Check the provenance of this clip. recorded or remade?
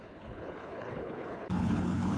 remade